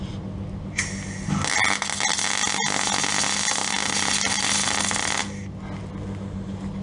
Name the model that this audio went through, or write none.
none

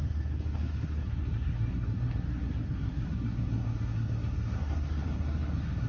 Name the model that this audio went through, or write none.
codec, SNAC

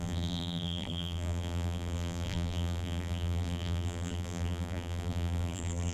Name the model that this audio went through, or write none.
vocoder, BigVGAN v2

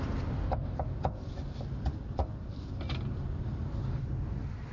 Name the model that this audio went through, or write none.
none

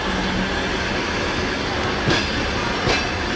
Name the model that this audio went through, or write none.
none